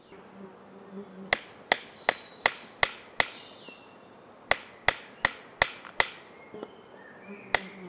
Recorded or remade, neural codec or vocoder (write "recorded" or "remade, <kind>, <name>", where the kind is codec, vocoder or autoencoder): recorded